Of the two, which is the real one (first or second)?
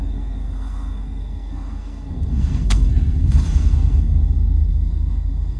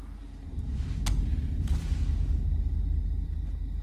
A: second